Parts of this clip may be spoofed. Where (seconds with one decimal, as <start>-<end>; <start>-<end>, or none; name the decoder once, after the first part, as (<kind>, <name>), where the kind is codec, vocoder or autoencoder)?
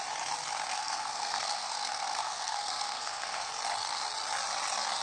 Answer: 0.7-3.5 (codec, SNAC)